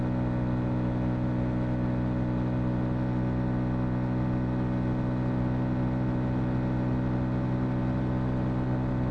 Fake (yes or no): no